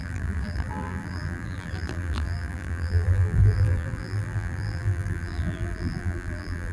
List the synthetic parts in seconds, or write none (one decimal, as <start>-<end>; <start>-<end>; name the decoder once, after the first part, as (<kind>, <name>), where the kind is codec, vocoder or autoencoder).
0.0-6.7 (vocoder, BigVGAN v2)